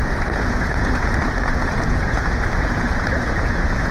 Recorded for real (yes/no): no